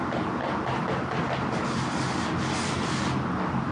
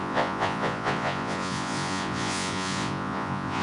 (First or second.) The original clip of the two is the first